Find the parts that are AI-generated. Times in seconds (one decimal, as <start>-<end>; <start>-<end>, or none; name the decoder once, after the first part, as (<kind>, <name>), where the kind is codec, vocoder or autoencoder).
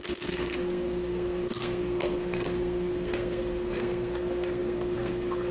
0.0-5.5 (codec, SNAC)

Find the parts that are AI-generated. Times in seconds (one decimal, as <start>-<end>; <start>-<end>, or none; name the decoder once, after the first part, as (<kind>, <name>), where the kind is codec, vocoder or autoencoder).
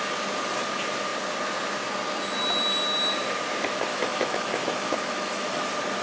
3.9-5.6 (autoencoder, DAC-VAE)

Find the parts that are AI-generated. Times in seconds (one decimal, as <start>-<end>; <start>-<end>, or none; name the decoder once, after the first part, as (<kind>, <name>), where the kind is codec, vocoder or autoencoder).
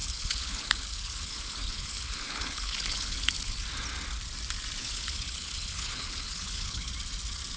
0.0-3.6 (codec, HILCodec); 4.8-6.9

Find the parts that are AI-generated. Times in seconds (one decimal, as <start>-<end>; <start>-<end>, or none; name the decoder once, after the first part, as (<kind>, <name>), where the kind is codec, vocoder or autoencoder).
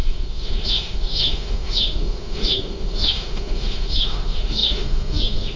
0.0-5.6 (autoencoder, DAC-VAE)